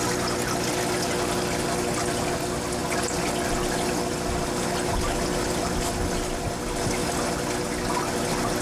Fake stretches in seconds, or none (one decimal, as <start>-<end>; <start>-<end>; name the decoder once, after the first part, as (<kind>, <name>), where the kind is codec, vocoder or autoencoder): none